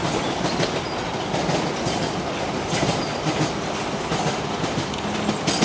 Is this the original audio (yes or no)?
yes